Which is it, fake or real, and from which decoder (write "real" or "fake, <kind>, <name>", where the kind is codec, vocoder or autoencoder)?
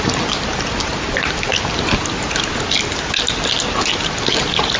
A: real